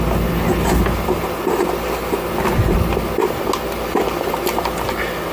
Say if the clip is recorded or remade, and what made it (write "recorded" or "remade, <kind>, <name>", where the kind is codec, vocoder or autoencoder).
recorded